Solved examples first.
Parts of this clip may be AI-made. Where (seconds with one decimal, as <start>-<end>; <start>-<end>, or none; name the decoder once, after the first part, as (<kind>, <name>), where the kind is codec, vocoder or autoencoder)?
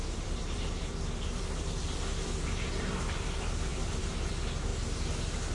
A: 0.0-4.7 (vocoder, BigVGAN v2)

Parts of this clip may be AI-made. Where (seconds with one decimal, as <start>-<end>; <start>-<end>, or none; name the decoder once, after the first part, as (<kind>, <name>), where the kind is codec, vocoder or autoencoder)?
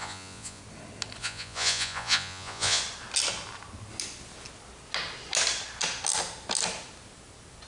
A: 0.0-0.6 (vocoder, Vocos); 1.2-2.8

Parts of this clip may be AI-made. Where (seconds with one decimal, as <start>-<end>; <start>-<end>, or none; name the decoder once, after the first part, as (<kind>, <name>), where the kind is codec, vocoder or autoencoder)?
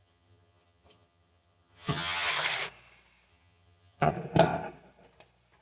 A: 0.0-2.3 (vocoder, HiFi-GAN); 3.3-4.1